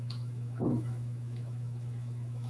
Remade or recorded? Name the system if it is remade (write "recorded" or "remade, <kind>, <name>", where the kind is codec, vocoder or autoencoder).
remade, autoencoder, DAC-VAE